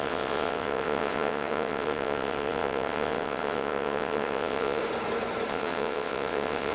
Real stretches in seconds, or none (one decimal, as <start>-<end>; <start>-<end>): 4.8-5.5